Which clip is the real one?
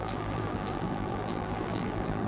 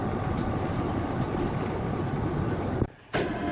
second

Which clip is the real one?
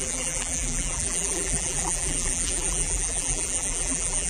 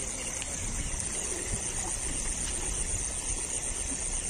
second